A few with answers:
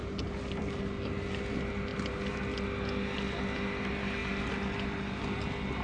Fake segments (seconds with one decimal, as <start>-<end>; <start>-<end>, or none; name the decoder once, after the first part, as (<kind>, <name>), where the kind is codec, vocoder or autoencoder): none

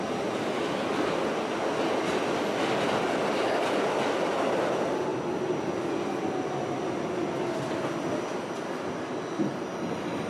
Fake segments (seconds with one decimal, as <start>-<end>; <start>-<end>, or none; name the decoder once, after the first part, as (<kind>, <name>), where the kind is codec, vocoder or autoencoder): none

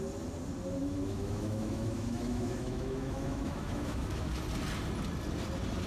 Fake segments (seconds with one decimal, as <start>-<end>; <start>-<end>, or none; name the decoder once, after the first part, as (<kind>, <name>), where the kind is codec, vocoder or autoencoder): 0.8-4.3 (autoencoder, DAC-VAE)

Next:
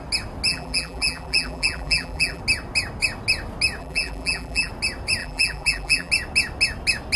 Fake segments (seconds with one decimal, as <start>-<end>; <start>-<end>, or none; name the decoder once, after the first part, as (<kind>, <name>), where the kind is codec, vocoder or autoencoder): 0.5-2.4 (vocoder, BigVGAN v2); 3.8-4.7; 5.2-6.1